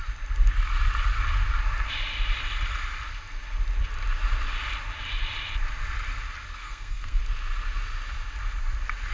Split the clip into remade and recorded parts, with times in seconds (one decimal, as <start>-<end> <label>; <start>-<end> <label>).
0.0-6.6 recorded; 6.6-7.2 remade; 7.2-9.1 recorded